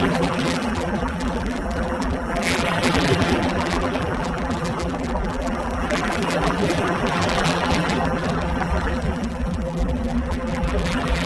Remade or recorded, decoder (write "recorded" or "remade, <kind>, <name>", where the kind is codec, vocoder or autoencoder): remade, vocoder, BigVGAN v2